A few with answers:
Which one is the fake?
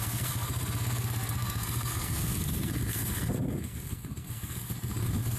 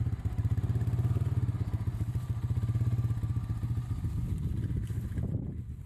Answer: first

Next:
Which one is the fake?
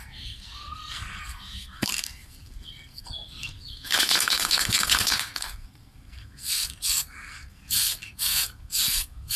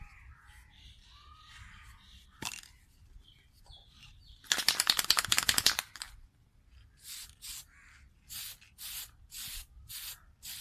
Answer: first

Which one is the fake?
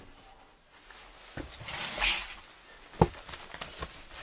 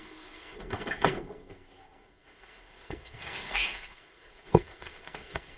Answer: second